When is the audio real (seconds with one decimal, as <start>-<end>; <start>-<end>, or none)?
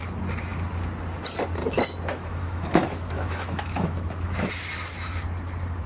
0.0-1.6; 4.5-5.9